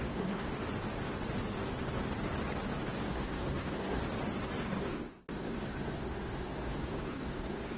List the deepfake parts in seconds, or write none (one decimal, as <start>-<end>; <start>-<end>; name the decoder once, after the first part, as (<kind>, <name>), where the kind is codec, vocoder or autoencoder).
0.0-0.5 (codec, SNAC); 3.1-4.0; 4.6-7.8